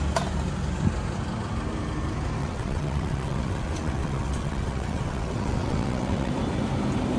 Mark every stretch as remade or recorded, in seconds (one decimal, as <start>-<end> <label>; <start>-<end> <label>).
0.0-2.4 recorded; 2.4-6.3 remade; 6.3-7.2 recorded